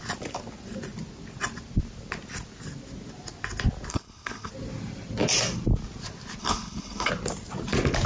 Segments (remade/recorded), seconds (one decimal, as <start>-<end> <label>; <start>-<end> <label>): 0.0-3.9 recorded; 3.9-4.5 remade; 4.5-6.4 recorded; 6.4-7.1 remade; 7.1-8.1 recorded